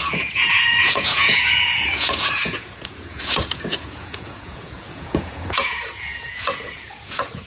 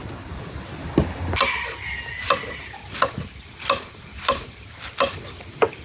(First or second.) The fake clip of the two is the first